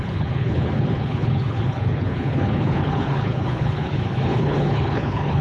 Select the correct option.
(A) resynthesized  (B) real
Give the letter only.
A